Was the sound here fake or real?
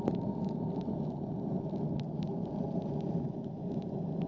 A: real